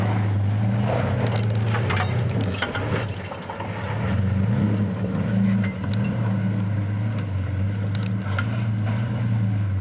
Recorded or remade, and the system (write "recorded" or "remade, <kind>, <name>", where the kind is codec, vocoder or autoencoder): recorded